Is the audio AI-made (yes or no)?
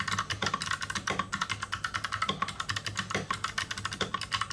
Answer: no